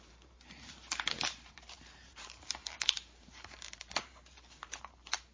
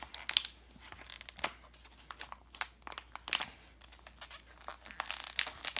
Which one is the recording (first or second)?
second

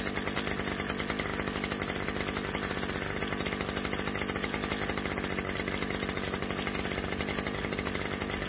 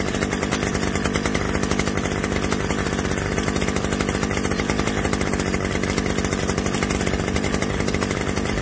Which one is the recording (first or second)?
first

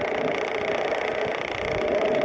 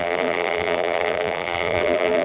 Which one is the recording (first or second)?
first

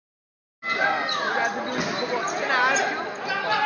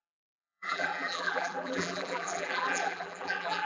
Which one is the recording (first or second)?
first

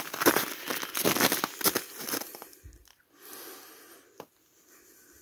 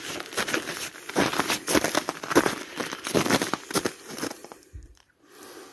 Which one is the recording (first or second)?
first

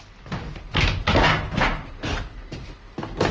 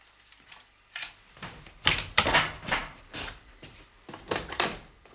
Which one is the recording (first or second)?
first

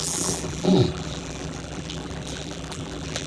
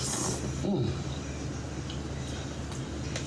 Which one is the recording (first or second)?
second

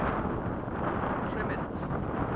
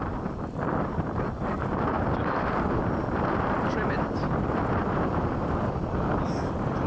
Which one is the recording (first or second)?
first